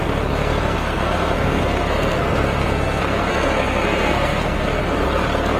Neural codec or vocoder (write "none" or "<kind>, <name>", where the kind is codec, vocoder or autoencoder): codec, SNAC